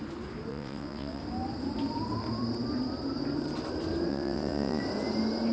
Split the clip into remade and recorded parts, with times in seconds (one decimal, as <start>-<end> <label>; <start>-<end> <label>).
0.0-0.5 recorded; 0.5-1.2 remade; 1.2-4.1 recorded; 4.1-4.8 remade; 4.8-5.5 recorded